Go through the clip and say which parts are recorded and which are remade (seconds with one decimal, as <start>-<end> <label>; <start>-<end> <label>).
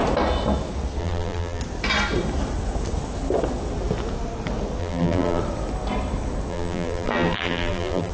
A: 0.0-1.0 recorded; 1.0-1.6 remade; 1.6-4.8 recorded; 4.8-5.4 remade; 5.4-6.5 recorded; 6.5-8.1 remade